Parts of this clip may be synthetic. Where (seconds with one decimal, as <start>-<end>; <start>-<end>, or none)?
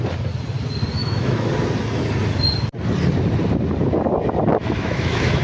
1.0-1.5; 4.6-5.4